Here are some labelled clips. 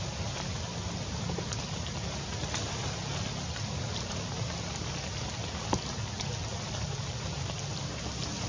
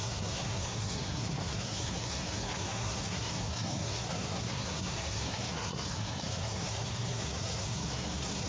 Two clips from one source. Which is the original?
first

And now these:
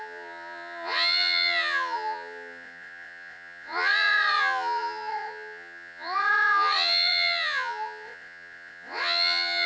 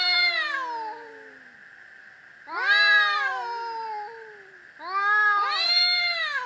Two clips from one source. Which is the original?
second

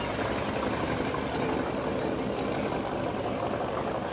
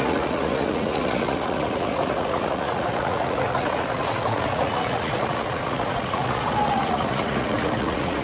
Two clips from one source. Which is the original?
first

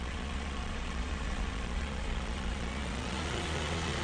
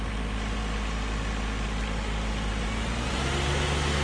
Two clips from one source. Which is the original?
second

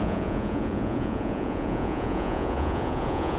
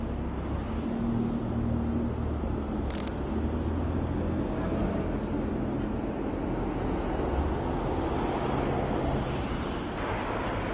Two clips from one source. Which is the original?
second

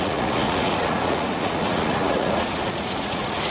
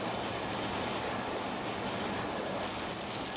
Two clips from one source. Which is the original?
second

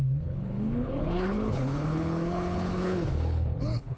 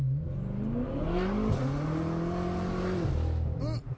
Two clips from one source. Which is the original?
second